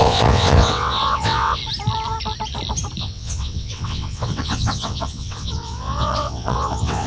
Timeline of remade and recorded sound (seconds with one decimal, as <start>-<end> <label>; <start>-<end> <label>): 0.0-1.6 remade; 1.6-3.0 recorded; 3.0-7.1 remade